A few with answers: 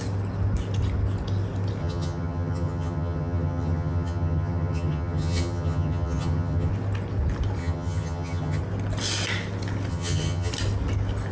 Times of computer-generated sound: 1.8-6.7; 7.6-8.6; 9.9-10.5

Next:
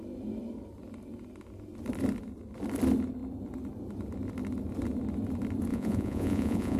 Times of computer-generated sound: 5.7-6.8

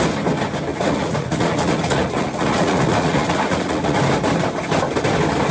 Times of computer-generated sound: 0.7-4.0